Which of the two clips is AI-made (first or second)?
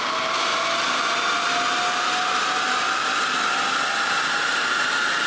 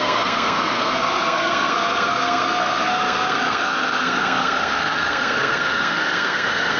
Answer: second